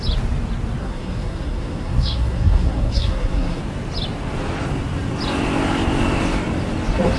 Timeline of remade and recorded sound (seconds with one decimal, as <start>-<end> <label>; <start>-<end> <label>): 0.0-0.8 recorded; 0.8-3.6 remade; 3.6-7.2 recorded